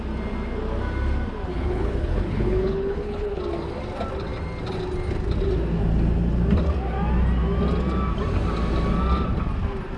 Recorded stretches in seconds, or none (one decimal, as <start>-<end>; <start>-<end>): 0.0-1.5; 3.4-10.0